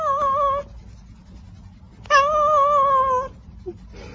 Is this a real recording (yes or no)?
yes